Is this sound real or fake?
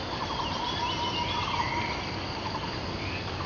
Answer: real